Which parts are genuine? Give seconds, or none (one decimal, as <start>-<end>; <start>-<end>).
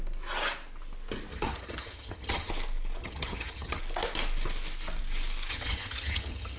0.0-1.3; 2.5-3.0; 3.8-5.5